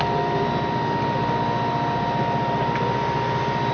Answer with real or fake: real